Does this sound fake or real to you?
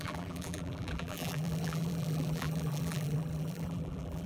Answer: fake